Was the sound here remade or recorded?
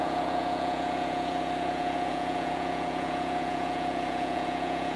remade